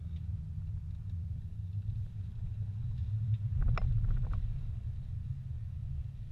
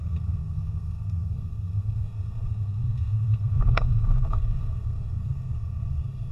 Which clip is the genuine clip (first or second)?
first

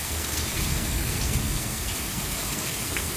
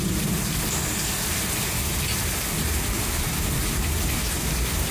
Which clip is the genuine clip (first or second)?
second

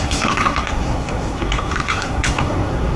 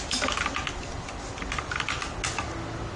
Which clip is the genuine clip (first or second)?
second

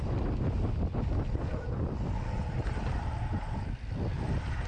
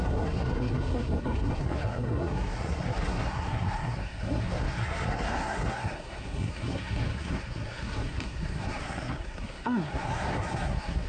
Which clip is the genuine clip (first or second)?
first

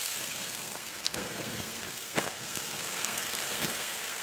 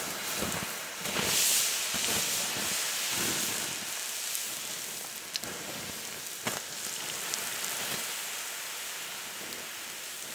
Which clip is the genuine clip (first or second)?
second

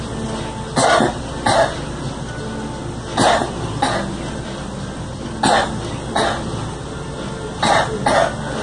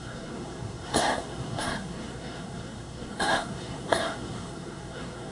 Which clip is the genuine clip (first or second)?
first